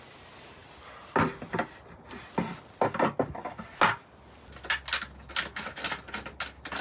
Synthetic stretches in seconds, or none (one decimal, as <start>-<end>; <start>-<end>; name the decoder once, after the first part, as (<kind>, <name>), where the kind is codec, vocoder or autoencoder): none